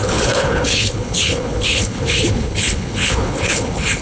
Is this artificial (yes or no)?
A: yes